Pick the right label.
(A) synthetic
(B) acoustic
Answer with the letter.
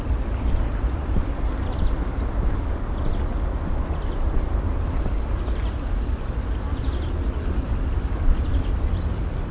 B